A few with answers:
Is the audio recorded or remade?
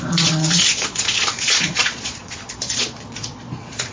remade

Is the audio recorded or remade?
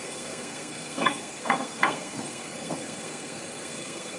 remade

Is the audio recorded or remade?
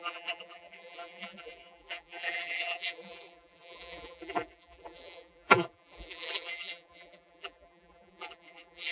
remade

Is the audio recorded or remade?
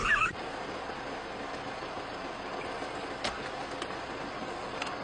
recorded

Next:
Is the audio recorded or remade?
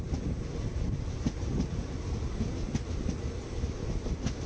recorded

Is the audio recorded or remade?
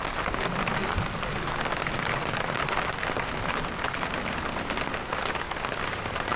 recorded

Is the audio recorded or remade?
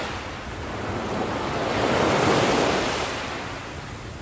recorded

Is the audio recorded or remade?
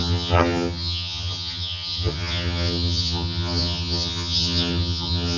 remade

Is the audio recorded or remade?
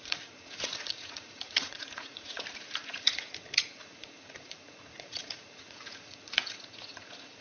remade